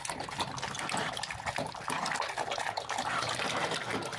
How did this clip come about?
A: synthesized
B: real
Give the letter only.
B